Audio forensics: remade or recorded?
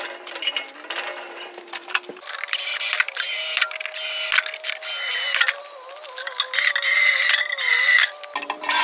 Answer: recorded